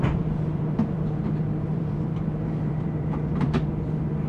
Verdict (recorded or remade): remade